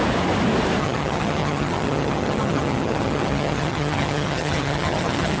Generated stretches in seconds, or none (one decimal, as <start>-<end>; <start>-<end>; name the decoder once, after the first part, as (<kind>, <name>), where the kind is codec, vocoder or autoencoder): 0.8-5.4 (vocoder, HiFi-GAN)